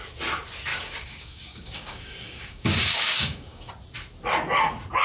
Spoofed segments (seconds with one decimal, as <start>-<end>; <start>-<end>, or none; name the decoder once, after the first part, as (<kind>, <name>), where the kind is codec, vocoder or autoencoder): 0.7-3.7 (codec, DAC)